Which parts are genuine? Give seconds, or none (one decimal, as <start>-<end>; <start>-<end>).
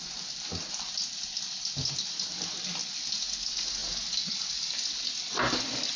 0.0-6.0